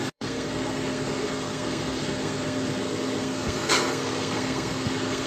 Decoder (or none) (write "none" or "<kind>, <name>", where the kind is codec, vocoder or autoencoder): codec, SNAC